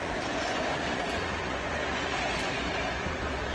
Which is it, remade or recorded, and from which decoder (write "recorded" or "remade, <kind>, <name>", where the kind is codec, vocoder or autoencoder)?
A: remade, vocoder, Vocos